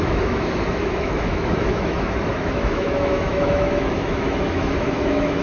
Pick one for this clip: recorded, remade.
remade